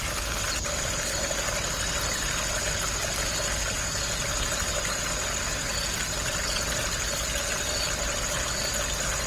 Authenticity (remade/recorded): recorded